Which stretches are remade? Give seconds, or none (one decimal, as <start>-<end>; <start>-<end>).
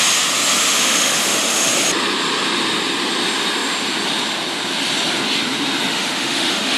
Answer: 0.6-1.7; 5.9-6.8